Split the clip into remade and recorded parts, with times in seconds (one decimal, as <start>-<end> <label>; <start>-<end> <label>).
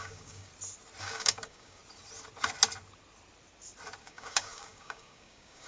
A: 0.0-0.5 remade; 0.5-1.0 recorded; 1.0-1.8 remade; 1.8-4.0 recorded; 4.0-5.7 remade